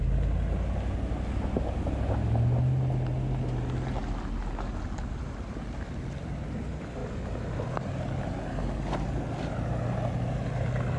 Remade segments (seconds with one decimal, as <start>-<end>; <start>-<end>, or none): none